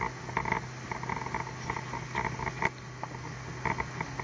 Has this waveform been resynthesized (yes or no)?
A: no